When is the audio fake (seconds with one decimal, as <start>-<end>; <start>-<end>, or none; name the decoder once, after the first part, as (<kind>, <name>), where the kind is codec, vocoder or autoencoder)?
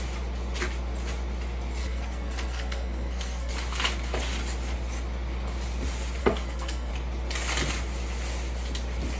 1.8-3.5 (codec, SNAC); 6.2-6.9